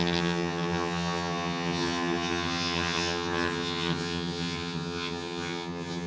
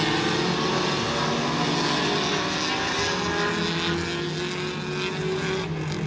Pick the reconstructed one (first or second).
first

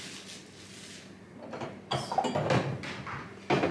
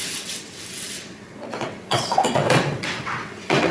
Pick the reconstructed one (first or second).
second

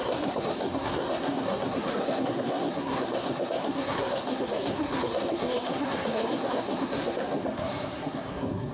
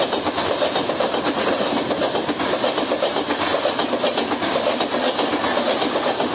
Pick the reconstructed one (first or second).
first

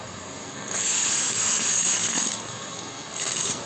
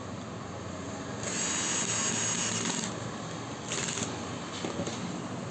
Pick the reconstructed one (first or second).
first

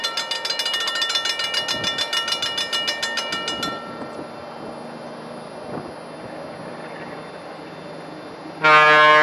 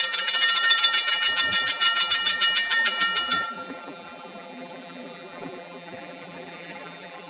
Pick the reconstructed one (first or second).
second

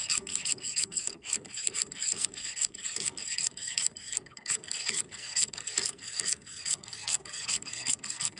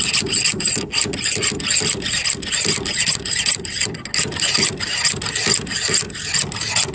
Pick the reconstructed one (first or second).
first